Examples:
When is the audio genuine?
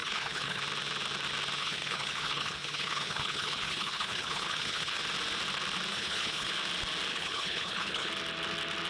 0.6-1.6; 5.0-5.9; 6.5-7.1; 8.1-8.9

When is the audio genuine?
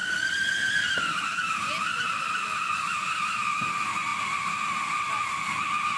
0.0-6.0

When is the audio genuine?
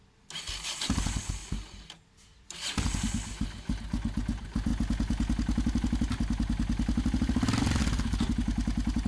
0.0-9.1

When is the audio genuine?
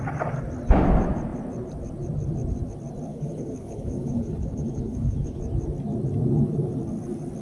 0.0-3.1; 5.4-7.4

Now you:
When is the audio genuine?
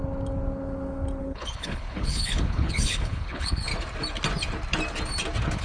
0.0-1.2; 3.7-5.6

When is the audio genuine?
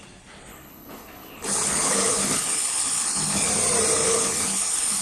0.0-0.5; 3.5-3.9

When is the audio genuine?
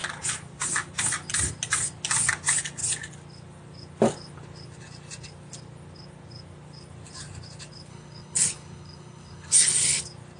0.0-7.9; 10.0-10.4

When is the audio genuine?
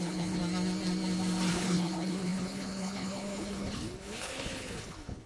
0.4-1.5